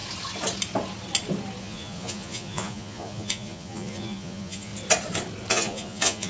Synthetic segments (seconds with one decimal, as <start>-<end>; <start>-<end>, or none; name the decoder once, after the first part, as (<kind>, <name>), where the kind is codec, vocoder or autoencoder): 1.6-4.7 (vocoder, Vocos); 5.5-6.3